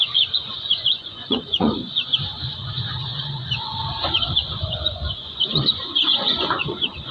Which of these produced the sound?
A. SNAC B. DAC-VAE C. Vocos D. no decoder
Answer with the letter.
C